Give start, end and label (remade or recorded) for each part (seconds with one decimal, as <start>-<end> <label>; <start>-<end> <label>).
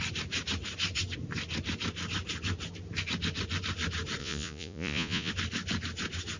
0.0-4.2 recorded; 4.2-5.3 remade; 5.3-6.4 recorded